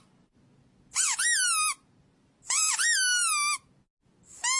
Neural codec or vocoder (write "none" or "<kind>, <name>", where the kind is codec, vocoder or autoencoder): none